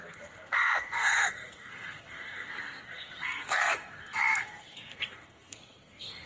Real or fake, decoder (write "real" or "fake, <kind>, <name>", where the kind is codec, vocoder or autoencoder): fake, codec, SNAC